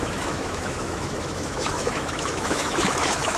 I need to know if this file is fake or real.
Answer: fake